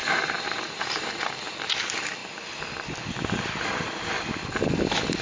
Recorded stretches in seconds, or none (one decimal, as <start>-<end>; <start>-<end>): 1.7-5.2